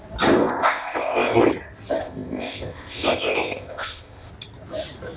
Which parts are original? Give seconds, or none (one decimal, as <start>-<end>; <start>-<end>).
0.0-0.4; 1.4-2.0; 4.3-5.2